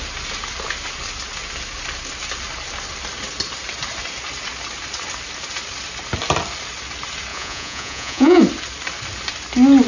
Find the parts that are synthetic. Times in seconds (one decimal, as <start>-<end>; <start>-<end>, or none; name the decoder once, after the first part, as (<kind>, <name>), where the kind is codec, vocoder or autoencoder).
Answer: 7.3-8.4 (vocoder, Vocos)

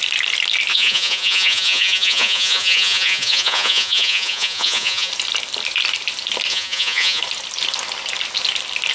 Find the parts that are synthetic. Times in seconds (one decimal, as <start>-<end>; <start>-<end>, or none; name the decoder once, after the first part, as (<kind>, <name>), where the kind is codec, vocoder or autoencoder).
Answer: 0.7-5.1 (vocoder, Vocos); 6.5-7.2